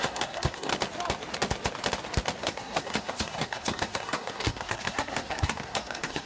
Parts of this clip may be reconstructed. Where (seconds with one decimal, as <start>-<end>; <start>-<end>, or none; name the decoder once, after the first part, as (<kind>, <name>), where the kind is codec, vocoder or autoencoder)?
0.0-0.7 (codec, SNAC); 2.4-6.3